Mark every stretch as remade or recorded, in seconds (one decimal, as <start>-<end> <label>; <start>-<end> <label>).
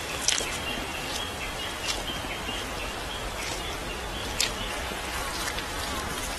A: 0.0-6.4 recorded